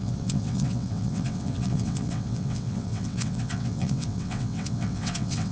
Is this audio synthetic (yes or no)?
yes